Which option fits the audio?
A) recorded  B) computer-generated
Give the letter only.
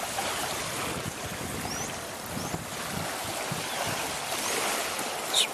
A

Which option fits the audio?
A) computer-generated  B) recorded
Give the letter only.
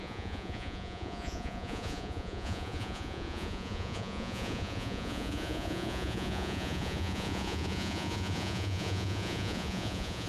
A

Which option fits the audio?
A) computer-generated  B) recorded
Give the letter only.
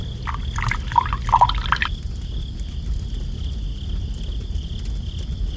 B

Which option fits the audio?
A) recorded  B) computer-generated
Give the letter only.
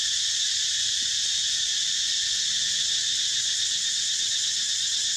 A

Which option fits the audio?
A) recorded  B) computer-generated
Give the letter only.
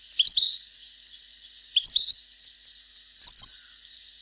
A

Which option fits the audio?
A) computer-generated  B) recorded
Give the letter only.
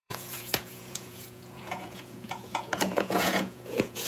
A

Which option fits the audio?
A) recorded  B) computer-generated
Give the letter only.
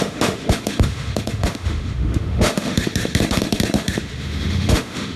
B